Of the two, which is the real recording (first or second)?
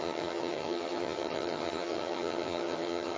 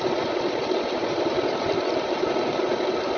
second